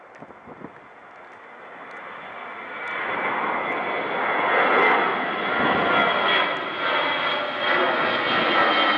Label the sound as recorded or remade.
recorded